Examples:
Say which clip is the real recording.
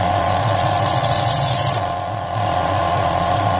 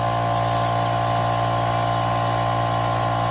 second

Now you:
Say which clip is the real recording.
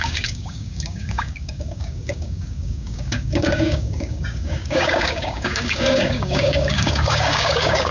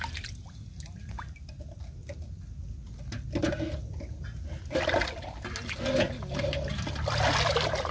second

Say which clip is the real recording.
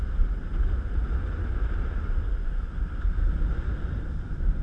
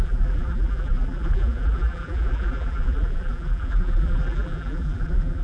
first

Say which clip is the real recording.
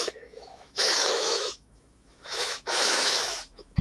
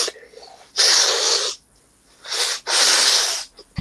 second